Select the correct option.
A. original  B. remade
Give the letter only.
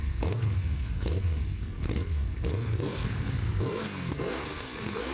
B